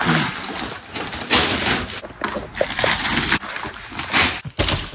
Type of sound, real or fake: real